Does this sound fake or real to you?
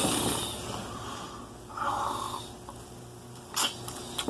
real